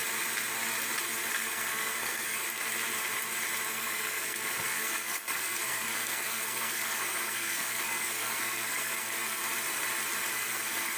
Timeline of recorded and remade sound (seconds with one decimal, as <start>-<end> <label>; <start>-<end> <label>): 0.0-1.3 recorded; 1.3-2.4 remade; 2.4-3.7 recorded; 3.7-9.4 remade; 9.4-10.3 recorded; 10.3-11.0 remade